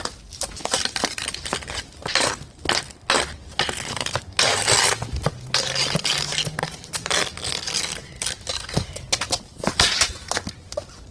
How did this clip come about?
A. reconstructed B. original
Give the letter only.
B